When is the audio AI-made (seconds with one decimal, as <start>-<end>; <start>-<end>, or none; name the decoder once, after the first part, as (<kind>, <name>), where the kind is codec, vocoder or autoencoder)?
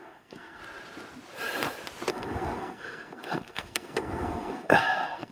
0.0-0.6 (codec, SNAC); 2.1-5.3